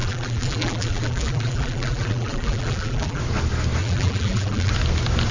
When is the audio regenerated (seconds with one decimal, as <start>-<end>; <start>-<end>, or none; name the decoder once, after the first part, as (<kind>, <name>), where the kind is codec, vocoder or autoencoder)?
0.0-3.2 (vocoder, BigVGAN v2); 3.8-4.7

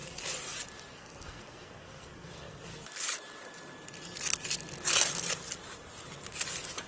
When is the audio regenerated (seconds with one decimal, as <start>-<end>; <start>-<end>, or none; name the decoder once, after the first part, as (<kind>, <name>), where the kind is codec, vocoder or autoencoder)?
0.9-2.7 (codec, SNAC)

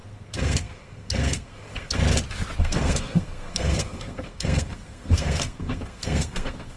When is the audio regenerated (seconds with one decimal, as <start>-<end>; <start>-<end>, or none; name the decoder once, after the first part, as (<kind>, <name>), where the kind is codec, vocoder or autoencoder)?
0.0-2.0 (codec, SNAC); 2.6-6.8

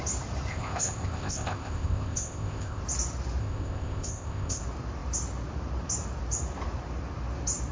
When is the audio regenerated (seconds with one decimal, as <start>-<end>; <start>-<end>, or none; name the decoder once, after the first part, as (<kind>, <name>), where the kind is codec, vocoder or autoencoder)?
0.5-2.8 (codec, ZipCodec); 3.4-4.6

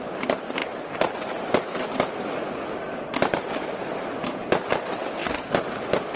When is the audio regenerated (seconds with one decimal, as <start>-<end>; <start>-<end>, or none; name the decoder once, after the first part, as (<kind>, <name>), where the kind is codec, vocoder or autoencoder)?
0.0-5.2 (vocoder, BigVGAN v2)

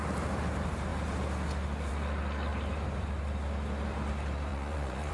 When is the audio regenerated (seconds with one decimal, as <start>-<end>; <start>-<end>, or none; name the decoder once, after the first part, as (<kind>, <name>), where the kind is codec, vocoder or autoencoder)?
4.5-5.1 (vocoder, Vocos)

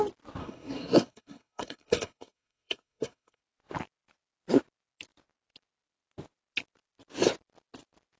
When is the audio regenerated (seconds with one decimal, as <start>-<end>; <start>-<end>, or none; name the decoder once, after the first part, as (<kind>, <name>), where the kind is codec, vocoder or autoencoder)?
0.4-3.4 (codec, SNAC)